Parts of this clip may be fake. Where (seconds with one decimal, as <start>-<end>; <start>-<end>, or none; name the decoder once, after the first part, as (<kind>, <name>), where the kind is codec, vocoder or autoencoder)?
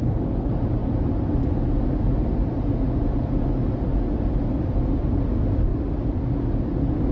5.7-6.3 (vocoder, BigVGAN v2)